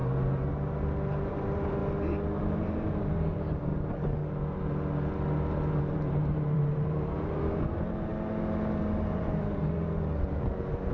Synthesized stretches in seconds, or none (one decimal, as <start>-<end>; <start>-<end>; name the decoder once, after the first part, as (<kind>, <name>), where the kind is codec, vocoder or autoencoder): 0.0-1.8 (vocoder, BigVGAN v2); 2.4-3.7; 5.8-8.1; 9.0-10.9